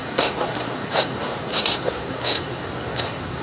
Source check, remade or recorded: remade